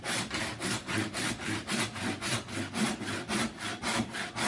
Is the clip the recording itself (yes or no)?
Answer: yes